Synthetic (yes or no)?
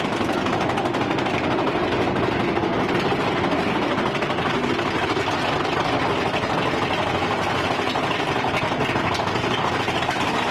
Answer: no